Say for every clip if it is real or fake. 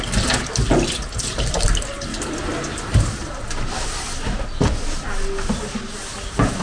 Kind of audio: real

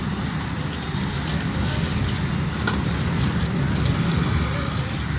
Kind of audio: real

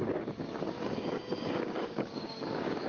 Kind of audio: fake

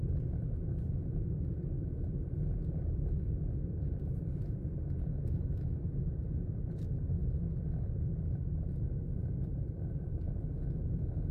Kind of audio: real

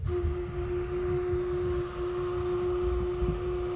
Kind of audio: real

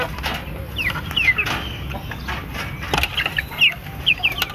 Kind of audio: real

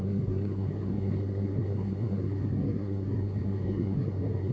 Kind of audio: fake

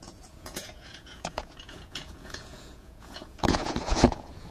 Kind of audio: fake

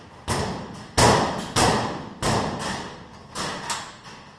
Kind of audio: real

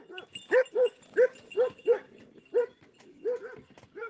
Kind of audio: real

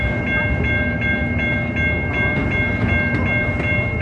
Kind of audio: real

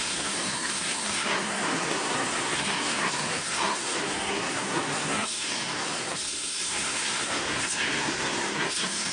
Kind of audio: fake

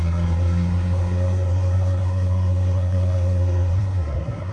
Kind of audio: fake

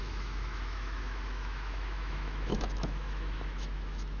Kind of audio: fake